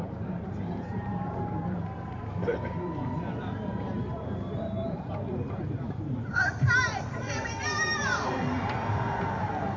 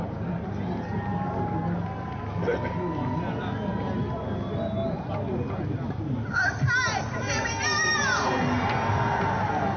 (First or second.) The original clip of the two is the second